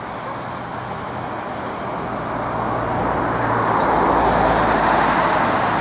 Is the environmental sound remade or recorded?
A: recorded